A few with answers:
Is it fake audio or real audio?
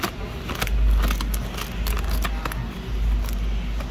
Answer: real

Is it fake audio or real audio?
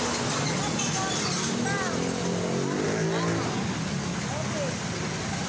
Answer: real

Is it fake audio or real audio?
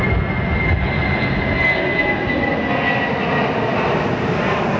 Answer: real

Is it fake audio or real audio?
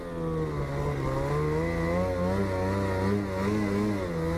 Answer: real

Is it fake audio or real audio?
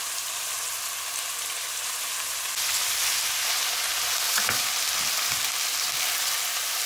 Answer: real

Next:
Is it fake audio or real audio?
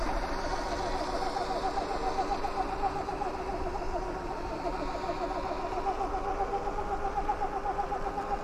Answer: real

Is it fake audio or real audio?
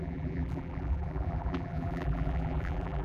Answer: fake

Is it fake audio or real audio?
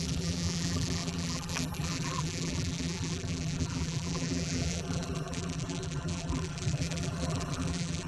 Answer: fake